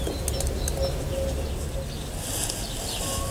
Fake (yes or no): no